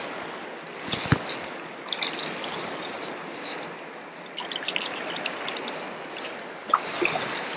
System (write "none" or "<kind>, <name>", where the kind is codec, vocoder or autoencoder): none